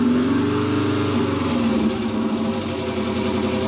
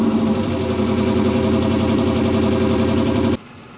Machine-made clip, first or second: second